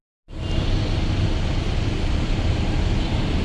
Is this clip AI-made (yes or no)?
no